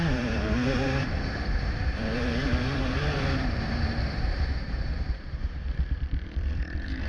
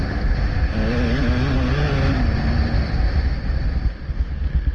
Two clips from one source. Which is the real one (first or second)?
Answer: second